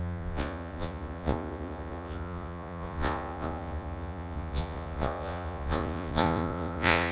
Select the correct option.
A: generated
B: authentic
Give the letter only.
A